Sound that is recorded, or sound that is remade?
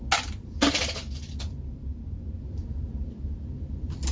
recorded